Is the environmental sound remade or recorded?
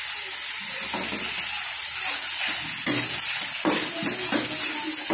recorded